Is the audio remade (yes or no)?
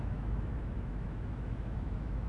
yes